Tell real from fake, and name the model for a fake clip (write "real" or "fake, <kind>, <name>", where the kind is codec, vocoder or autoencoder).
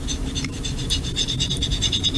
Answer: fake, vocoder, BigVGAN v2